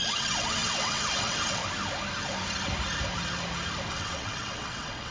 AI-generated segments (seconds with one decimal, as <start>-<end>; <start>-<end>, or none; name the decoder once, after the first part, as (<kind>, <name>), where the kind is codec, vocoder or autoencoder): 0.0-1.6 (vocoder, WaveNeXt); 3.9-5.1